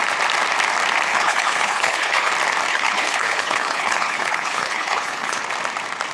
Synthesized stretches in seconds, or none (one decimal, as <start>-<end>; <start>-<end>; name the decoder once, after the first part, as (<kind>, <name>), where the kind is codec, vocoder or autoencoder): 1.1-2.3 (codec, HILCodec); 2.7-5.4